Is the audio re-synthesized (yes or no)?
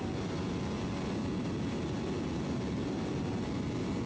no